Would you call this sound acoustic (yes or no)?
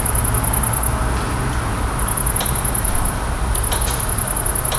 yes